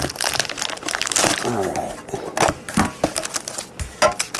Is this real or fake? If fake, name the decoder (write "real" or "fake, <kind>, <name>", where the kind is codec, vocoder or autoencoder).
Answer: real